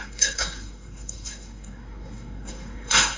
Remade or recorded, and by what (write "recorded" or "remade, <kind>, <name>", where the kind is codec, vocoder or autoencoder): remade, codec, SNAC